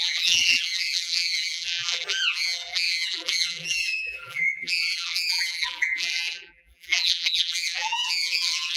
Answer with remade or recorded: remade